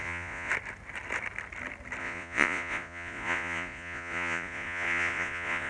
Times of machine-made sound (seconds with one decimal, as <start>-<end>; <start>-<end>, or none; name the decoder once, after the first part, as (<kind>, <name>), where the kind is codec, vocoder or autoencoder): 0.0-0.5 (vocoder, Vocos); 2.0-5.7